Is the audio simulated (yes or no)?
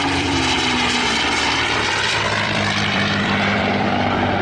yes